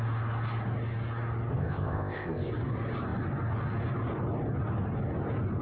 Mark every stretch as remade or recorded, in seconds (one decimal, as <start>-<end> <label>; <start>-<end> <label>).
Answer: 0.0-1.5 recorded; 1.5-2.5 remade; 2.5-5.6 recorded